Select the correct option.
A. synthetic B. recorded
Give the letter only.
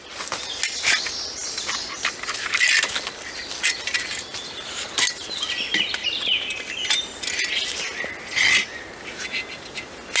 B